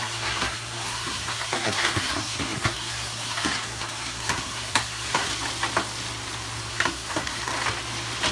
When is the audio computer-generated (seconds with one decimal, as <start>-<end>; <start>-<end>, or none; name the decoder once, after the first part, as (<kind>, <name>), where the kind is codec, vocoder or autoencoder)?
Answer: 0.0-5.3 (codec, SNAC); 6.7-7.5